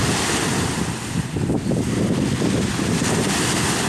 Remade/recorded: recorded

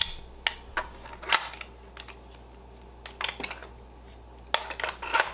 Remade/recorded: recorded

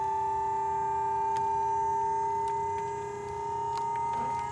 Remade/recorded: recorded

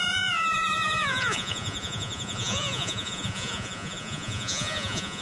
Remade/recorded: remade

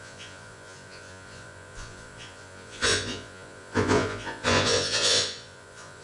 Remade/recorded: remade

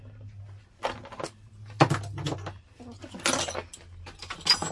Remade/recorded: recorded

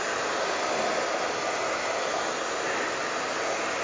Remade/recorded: recorded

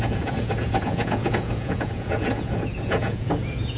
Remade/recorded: remade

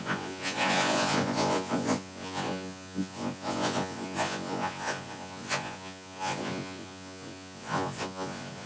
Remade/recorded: remade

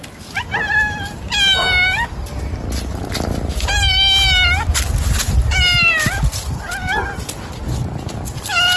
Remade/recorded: recorded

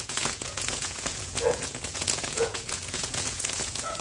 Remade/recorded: remade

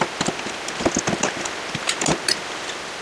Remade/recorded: recorded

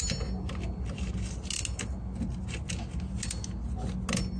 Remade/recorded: recorded